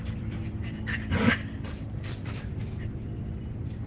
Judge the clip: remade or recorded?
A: remade